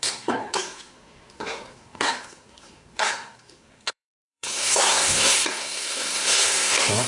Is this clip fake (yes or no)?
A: yes